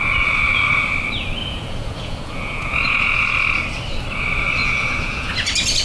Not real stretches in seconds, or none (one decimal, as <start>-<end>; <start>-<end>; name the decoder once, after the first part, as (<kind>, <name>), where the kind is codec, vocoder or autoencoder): 1.4-3.2 (vocoder, Vocos); 4.6-5.3